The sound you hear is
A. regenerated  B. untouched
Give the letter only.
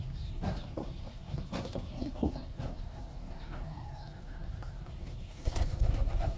A